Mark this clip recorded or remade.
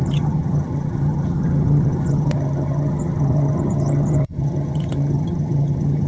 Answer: remade